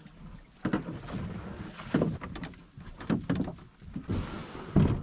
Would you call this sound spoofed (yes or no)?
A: no